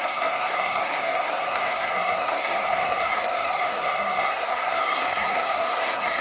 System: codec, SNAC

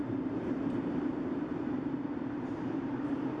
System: vocoder, BigVGAN v2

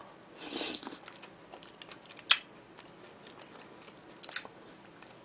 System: none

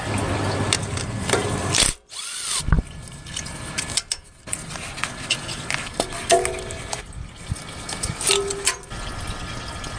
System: none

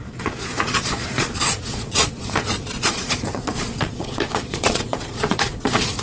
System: vocoder, Vocos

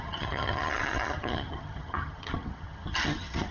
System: vocoder, HiFi-GAN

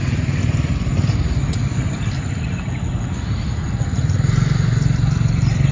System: none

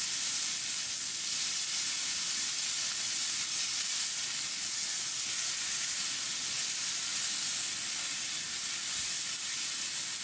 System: none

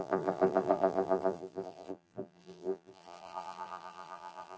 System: vocoder, BigVGAN v2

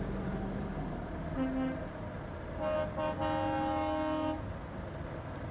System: none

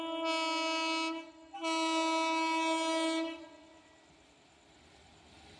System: none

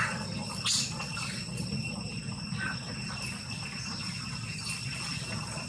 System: none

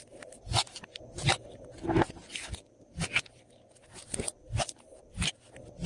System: none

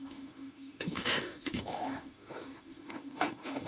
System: autoencoder, DAC-VAE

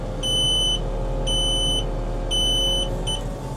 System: none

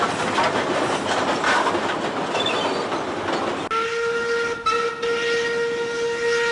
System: none